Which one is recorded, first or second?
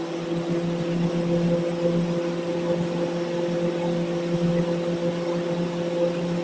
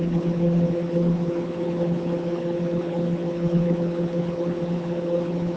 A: first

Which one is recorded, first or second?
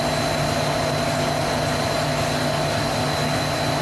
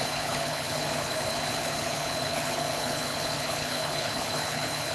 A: first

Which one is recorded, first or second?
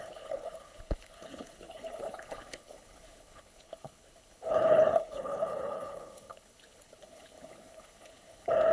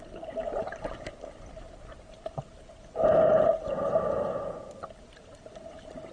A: second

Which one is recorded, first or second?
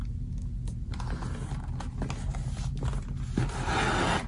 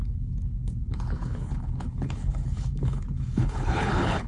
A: first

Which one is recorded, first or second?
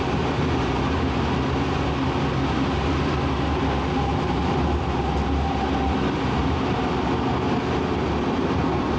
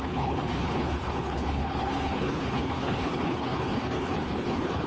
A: first